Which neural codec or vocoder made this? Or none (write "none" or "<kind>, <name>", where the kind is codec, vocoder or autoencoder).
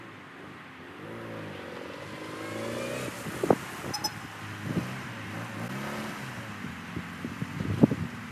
none